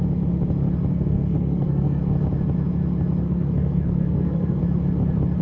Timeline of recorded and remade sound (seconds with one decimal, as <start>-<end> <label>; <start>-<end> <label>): 0.0-0.9 recorded; 0.9-2.0 remade; 2.0-3.2 recorded; 3.2-4.6 remade; 4.6-5.4 recorded